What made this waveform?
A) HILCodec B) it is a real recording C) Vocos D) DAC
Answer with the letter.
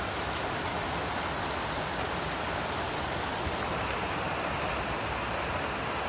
B